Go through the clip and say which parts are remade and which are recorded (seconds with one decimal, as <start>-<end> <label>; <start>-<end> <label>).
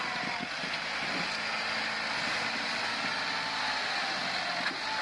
0.0-5.0 recorded